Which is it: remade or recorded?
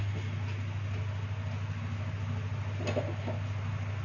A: recorded